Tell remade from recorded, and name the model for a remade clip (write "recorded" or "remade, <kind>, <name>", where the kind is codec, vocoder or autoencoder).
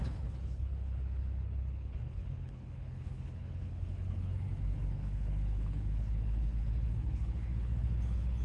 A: remade, codec, HILCodec